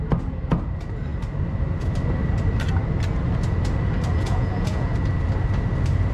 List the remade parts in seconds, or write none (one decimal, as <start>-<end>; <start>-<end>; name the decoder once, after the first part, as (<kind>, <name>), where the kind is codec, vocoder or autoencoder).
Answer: 4.1-4.9 (vocoder, Vocos)